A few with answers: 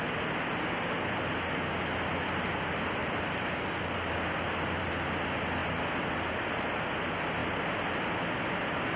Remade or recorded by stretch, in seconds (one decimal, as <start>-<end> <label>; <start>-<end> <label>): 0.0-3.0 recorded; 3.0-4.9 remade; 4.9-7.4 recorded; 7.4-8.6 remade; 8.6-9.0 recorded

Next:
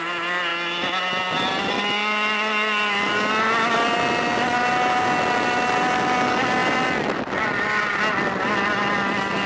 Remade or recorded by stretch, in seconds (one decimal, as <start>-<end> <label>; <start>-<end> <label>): 0.0-9.5 recorded

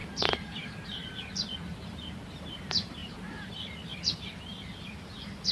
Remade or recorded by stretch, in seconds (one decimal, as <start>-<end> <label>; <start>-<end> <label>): 0.0-1.0 remade; 1.0-3.0 recorded; 3.0-3.5 remade; 3.5-5.5 recorded

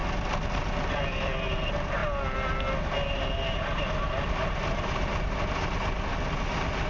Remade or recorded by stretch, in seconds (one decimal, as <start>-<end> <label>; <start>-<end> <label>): 0.0-0.8 recorded; 0.8-2.0 remade; 2.0-6.1 recorded; 6.1-6.9 remade

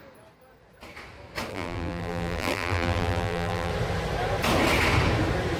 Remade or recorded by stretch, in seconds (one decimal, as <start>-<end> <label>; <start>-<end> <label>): 0.0-1.5 recorded; 1.5-3.7 remade; 3.7-5.6 recorded